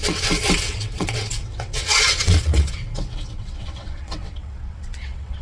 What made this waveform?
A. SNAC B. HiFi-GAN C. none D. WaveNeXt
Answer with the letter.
D